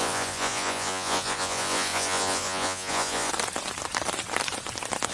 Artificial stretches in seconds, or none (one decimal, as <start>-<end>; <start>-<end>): 0.0-3.3